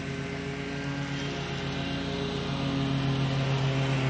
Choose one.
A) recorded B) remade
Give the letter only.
A